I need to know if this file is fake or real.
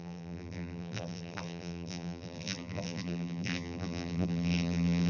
fake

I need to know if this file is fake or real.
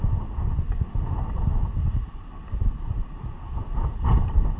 real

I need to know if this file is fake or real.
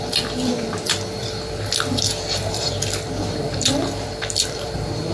fake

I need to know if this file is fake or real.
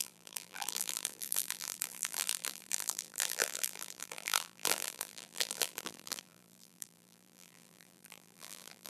fake